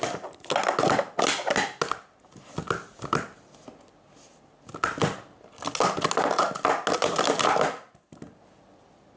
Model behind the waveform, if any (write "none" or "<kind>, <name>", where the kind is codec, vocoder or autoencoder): none